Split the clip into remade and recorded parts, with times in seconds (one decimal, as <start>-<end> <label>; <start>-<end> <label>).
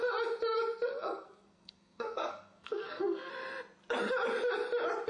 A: 0.0-0.9 recorded; 0.9-3.3 remade; 3.3-5.1 recorded